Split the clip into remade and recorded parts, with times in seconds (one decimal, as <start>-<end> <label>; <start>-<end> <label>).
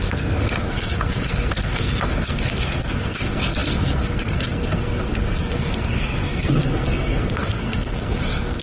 0.0-8.6 remade